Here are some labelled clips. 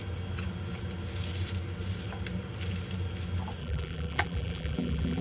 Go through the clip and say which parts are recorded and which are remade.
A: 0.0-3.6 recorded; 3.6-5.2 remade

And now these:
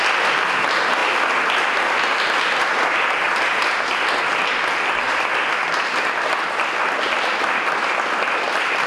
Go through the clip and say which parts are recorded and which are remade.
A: 0.0-8.9 recorded

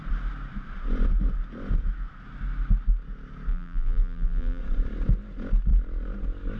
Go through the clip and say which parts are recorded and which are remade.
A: 0.0-3.5 recorded; 3.5-4.6 remade; 4.6-6.6 recorded

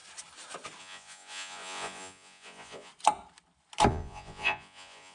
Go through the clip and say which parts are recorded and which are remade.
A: 0.0-0.8 recorded; 0.8-2.9 remade; 2.9-3.9 recorded; 3.9-5.1 remade

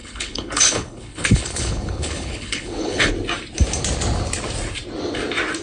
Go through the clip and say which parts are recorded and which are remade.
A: 0.0-3.1 remade; 3.1-5.6 recorded